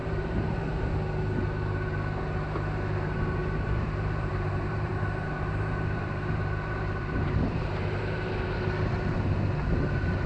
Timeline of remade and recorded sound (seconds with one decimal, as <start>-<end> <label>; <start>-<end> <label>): 0.0-0.9 remade; 0.9-3.4 recorded; 3.4-8.3 remade; 8.3-10.3 recorded